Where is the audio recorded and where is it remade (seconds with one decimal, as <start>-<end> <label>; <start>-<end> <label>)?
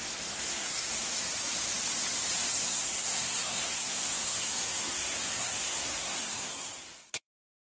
0.0-1.3 remade; 1.3-2.5 recorded; 2.5-7.7 remade